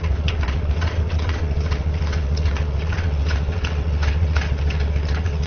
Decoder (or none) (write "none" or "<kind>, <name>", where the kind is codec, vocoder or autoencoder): vocoder, WaveNeXt